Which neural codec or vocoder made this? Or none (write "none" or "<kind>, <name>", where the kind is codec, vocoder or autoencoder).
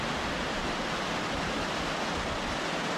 none